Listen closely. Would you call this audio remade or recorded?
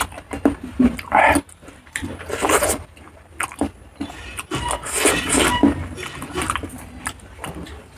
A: recorded